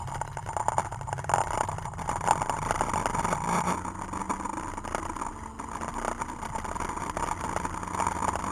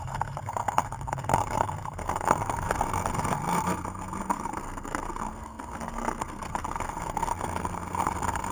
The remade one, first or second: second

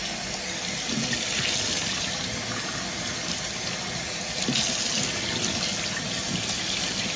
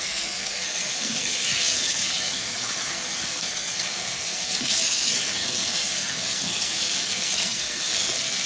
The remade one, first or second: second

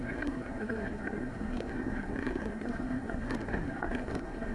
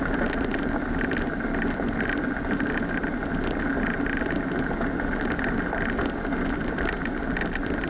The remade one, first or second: first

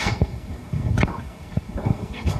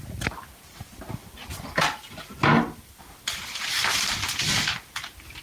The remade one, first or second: first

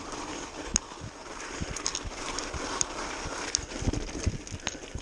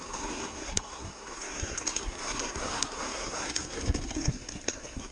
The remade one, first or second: second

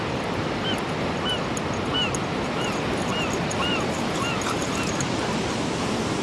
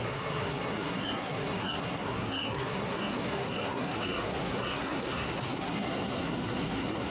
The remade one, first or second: second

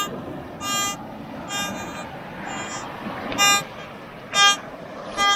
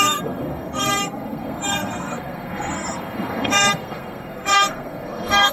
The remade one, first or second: second